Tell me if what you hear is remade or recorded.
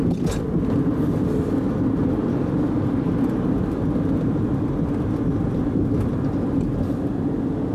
recorded